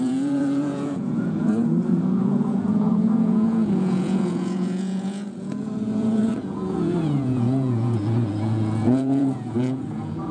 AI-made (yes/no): yes